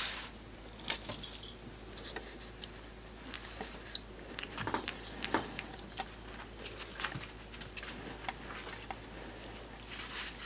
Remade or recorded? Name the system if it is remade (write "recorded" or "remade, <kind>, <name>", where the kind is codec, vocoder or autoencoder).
recorded